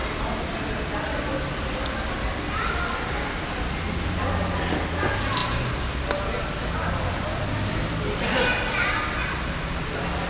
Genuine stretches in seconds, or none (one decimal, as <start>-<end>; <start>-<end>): 0.0-10.3